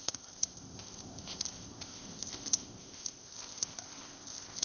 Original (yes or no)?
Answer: no